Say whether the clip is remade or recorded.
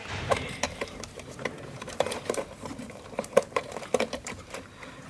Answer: remade